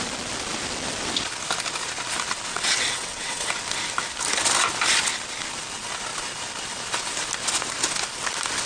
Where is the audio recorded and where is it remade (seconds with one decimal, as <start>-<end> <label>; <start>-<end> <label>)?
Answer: 0.0-2.5 recorded; 2.5-3.5 remade; 3.5-8.7 recorded